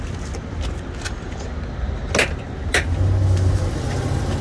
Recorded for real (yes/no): yes